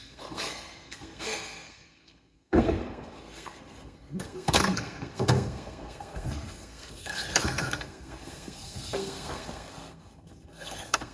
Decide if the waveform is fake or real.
fake